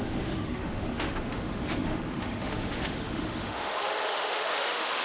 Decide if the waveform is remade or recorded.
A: remade